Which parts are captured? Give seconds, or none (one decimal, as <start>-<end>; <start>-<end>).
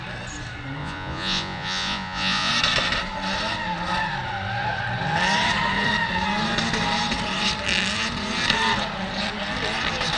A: 0.0-0.8; 2.5-10.2